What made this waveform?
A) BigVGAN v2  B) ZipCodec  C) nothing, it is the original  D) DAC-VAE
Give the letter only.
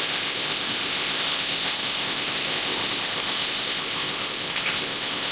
B